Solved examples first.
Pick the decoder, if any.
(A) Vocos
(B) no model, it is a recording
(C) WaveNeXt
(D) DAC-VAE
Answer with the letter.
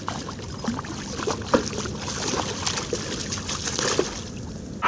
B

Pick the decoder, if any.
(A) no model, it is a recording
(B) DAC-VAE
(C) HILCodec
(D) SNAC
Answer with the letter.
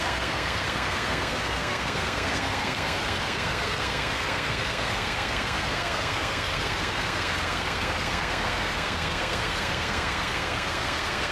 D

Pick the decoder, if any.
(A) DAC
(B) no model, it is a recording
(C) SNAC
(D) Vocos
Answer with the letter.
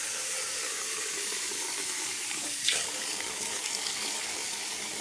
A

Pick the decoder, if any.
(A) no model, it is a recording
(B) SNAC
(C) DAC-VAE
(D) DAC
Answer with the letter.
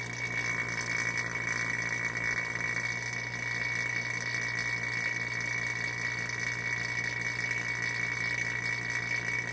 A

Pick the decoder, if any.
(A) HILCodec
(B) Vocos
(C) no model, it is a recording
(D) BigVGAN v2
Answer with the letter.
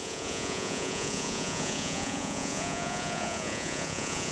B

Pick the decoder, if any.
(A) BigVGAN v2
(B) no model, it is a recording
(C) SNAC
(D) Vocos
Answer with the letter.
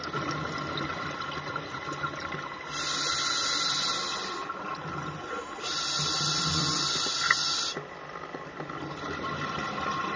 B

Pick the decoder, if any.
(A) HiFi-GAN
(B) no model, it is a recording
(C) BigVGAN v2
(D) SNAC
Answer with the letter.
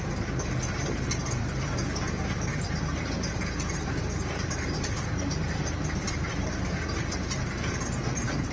C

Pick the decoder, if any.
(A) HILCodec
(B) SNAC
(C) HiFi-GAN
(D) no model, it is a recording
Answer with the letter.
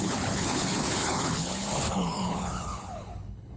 A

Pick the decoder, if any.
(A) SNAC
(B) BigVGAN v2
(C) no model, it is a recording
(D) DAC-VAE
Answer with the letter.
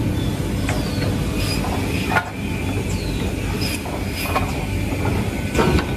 C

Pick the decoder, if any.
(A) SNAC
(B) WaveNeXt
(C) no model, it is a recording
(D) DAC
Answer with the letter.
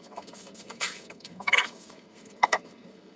A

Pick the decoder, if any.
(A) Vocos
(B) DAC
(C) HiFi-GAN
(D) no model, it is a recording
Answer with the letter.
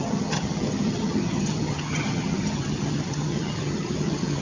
C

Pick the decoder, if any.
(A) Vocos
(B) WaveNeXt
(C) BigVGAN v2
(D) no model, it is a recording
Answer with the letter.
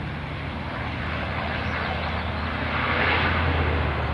D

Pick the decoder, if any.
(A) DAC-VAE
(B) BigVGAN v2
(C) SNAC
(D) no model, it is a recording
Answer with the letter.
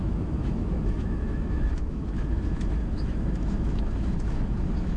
A